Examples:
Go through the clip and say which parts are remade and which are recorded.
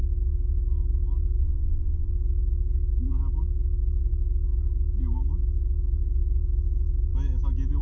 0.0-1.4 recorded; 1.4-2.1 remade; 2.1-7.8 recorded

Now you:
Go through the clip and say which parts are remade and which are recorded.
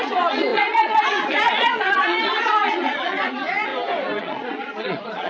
0.0-3.7 remade; 3.7-4.2 recorded; 4.2-5.3 remade